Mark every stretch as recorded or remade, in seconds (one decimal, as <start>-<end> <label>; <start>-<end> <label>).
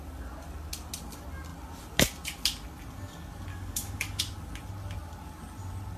0.0-3.5 recorded; 3.5-4.2 remade; 4.2-6.0 recorded